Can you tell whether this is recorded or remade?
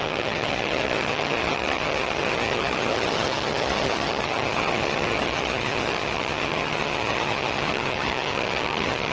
remade